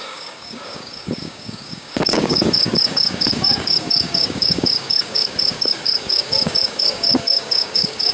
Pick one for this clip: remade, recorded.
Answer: remade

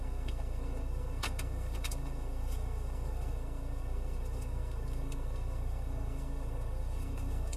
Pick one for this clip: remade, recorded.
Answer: remade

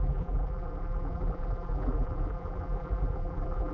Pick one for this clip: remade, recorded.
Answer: remade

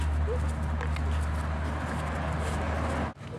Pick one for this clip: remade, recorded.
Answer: recorded